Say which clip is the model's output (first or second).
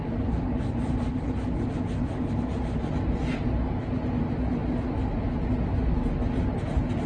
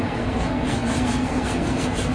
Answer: second